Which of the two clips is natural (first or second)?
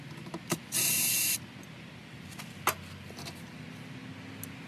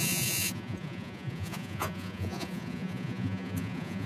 first